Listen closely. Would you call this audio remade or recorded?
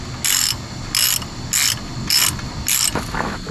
recorded